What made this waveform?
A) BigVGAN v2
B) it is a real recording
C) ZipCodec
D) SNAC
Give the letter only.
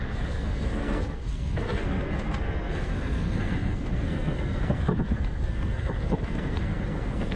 D